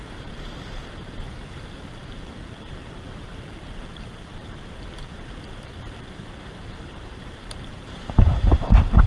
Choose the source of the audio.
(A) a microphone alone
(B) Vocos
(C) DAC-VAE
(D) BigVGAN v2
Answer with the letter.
D